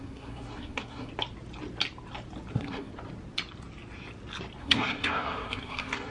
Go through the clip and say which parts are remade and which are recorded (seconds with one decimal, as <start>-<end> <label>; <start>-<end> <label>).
0.0-1.1 remade; 1.1-2.5 recorded; 2.5-2.9 remade; 2.9-4.6 recorded; 4.6-6.1 remade